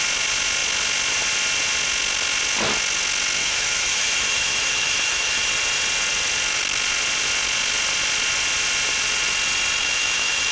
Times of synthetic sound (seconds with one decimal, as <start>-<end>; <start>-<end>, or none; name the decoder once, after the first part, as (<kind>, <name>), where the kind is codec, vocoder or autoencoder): 3.4-5.5 (autoencoder, DAC-VAE); 9.8-10.5